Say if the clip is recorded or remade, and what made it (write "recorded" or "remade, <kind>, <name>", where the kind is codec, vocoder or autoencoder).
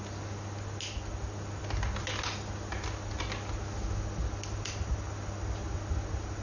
recorded